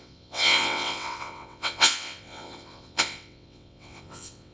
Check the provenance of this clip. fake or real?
fake